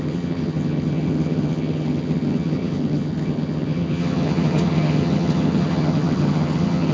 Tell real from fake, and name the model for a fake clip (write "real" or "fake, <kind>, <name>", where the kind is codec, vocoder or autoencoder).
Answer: fake, vocoder, HiFi-GAN